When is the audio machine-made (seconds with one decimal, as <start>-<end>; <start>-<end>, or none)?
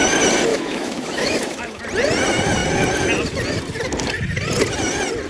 0.5-1.8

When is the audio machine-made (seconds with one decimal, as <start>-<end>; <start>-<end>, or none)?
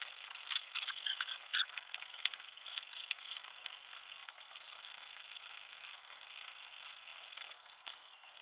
0.0-8.4